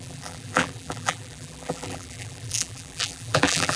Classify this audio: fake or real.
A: fake